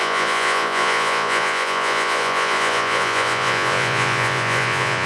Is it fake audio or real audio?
fake